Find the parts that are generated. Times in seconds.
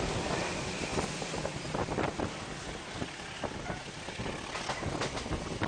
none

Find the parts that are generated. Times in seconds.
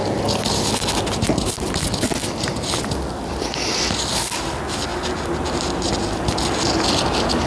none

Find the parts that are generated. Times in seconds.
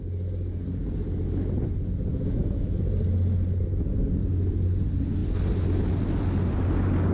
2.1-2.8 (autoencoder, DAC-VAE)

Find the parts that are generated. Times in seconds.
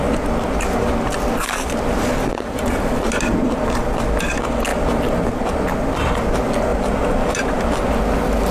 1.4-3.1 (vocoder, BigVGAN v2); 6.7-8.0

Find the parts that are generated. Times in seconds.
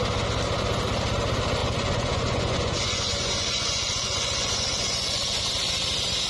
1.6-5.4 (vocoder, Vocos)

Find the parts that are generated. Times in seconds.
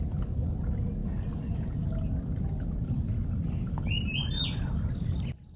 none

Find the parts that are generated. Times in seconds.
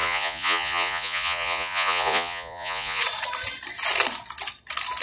0.0-3.0 (vocoder, Vocos)